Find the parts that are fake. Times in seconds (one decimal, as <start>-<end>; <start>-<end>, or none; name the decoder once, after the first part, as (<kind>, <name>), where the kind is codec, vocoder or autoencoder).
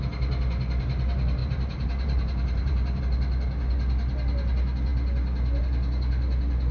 1.4-3.0 (vocoder, BigVGAN v2)